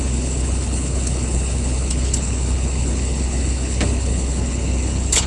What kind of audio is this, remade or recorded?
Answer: remade